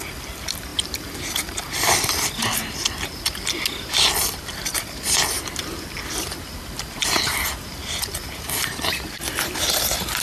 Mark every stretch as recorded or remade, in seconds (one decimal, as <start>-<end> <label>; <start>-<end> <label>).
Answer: 0.0-10.2 recorded